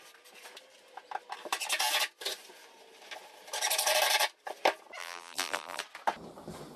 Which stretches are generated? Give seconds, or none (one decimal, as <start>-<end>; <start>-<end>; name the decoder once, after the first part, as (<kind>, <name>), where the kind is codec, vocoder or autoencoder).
5.0-5.8 (vocoder, BigVGAN v2)